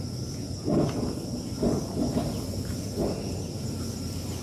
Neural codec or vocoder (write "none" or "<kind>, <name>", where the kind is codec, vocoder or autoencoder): none